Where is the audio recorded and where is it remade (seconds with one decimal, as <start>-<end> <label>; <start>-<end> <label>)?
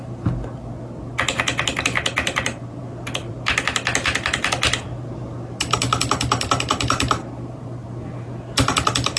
0.0-9.2 recorded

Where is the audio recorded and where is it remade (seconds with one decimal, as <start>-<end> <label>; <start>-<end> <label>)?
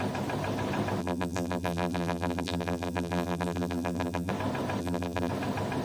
0.0-1.0 recorded; 1.0-4.3 remade; 4.3-4.8 recorded; 4.8-5.3 remade; 5.3-5.8 recorded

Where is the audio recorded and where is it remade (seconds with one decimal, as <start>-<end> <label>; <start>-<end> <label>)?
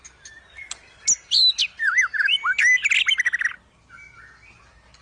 0.0-1.6 recorded; 1.6-2.9 remade; 2.9-5.0 recorded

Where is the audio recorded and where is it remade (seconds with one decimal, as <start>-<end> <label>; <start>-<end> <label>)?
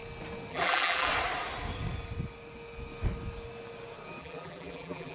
0.0-0.5 recorded; 0.5-1.1 remade; 1.1-4.2 recorded; 4.2-5.1 remade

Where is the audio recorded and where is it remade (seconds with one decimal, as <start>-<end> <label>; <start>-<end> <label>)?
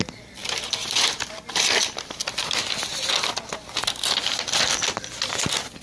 0.0-5.8 recorded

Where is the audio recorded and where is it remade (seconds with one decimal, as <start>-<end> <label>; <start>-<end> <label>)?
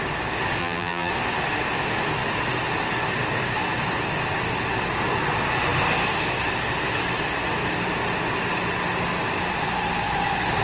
0.0-0.6 recorded; 0.6-1.1 remade; 1.1-10.6 recorded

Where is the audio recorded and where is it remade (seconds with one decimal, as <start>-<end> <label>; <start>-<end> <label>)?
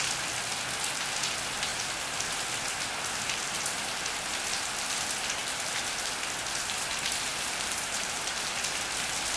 0.0-7.3 recorded; 7.3-8.4 remade; 8.4-9.4 recorded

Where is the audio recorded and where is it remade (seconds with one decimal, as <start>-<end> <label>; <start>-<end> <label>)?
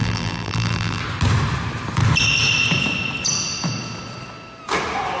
0.0-1.0 remade; 1.0-5.2 recorded